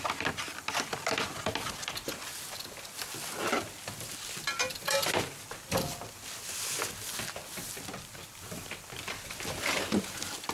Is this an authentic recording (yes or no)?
yes